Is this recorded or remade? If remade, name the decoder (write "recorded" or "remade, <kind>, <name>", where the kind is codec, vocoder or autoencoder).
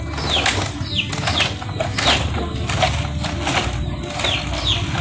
recorded